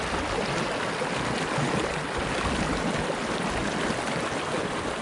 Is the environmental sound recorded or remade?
recorded